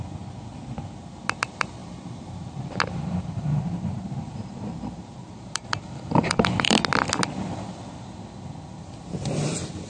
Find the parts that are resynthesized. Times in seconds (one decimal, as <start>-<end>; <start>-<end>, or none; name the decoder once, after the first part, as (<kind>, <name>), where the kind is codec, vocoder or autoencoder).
1.8-5.7 (vocoder, BigVGAN v2)